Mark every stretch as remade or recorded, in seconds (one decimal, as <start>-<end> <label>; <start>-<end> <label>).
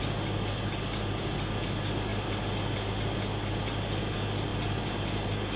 0.0-5.6 recorded